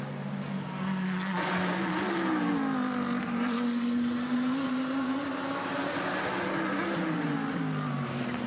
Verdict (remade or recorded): recorded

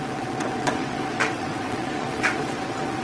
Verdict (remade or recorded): remade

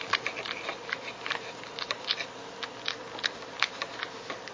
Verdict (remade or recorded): recorded